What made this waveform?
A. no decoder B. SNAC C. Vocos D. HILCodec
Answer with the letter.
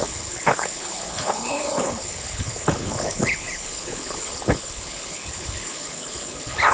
D